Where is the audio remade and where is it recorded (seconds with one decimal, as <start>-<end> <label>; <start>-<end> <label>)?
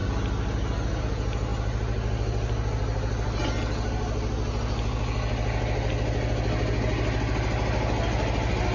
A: 0.0-8.7 recorded